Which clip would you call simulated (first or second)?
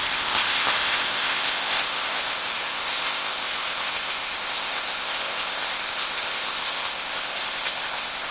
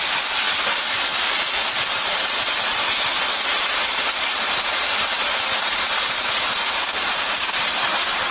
first